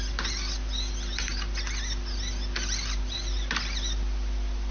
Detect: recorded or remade recorded